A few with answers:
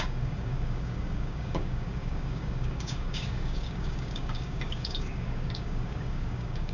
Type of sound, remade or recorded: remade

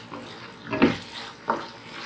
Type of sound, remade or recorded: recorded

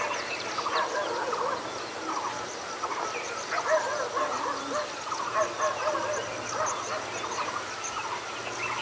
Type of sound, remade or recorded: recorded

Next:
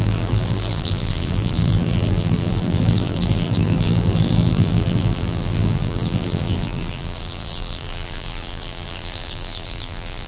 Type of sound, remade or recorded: remade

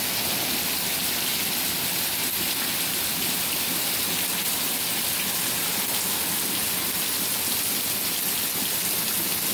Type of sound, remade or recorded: recorded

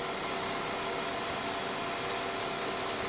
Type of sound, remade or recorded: recorded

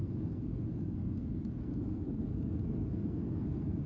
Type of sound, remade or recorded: remade